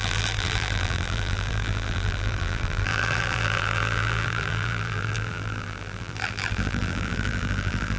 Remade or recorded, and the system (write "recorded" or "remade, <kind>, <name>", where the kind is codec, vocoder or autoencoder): remade, vocoder, BigVGAN v2